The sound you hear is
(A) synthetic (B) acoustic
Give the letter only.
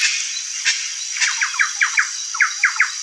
B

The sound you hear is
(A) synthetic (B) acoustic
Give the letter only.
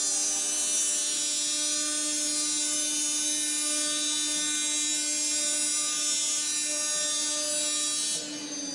B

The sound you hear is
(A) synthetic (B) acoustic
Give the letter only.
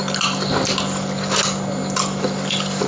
B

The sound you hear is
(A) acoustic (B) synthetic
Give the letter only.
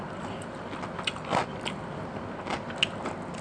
A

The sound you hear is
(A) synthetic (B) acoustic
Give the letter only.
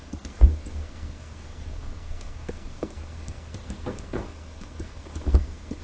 A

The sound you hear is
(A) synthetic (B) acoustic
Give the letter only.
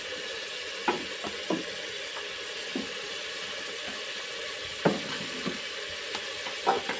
B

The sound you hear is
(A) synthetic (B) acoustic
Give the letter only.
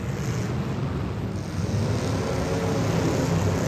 B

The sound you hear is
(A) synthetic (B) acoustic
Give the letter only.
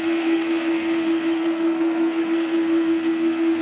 A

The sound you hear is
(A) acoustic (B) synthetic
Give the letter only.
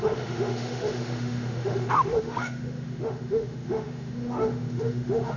B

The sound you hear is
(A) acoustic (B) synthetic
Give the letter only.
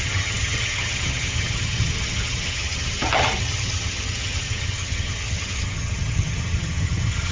B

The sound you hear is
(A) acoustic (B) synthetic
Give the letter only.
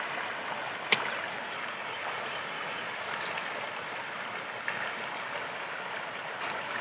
A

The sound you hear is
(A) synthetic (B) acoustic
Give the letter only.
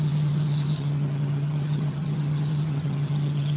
A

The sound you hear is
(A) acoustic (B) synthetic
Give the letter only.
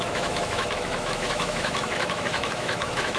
B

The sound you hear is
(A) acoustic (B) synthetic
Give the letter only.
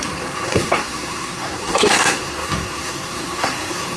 B